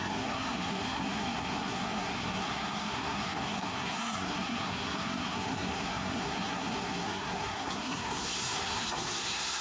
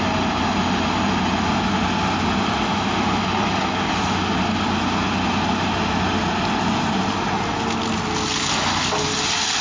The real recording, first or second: second